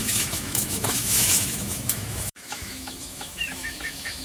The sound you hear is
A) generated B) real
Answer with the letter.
A